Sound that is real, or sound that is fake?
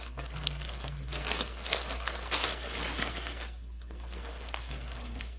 fake